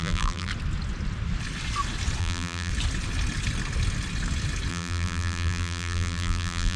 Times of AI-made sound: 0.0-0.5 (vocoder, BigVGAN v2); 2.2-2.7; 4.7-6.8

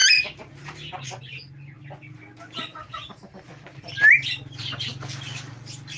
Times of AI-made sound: 0.0-0.6 (vocoder, BigVGAN v2)

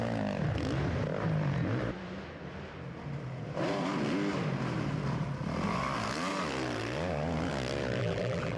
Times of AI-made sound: 8.0-8.6 (vocoder, BigVGAN v2)

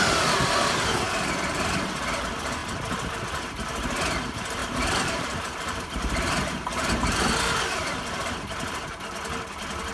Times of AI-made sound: 4.6-7.3 (vocoder, BigVGAN v2)

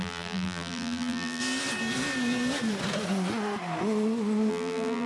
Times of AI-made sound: 0.0-1.4 (vocoder, BigVGAN v2); 4.5-5.1

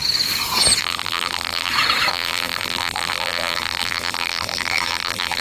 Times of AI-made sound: 0.8-1.7 (vocoder, BigVGAN v2); 2.1-5.4